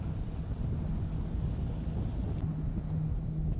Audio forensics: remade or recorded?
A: recorded